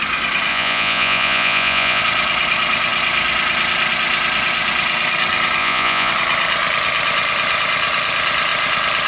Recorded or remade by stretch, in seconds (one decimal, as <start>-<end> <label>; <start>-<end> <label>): 0.0-0.5 recorded; 0.5-2.0 remade; 2.0-5.6 recorded; 5.6-6.1 remade; 6.1-9.1 recorded